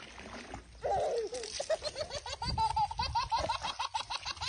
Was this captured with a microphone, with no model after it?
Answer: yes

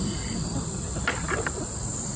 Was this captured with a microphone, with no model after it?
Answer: yes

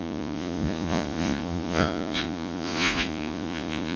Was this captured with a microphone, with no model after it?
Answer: no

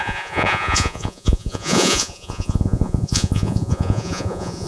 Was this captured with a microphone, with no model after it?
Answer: no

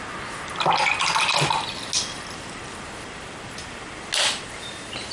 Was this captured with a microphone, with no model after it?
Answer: yes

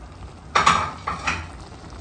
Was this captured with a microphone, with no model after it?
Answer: yes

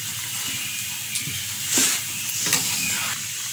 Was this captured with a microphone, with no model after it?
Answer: yes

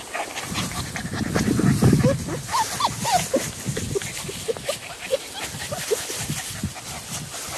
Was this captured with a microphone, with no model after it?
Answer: yes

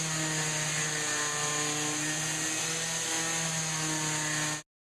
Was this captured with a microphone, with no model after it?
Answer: yes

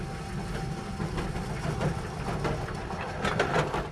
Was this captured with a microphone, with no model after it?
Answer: yes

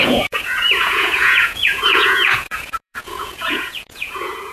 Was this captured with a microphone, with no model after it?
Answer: no